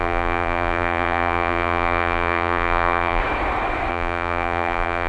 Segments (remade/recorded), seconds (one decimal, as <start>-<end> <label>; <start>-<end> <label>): 0.0-3.2 remade; 3.2-3.9 recorded; 3.9-5.1 remade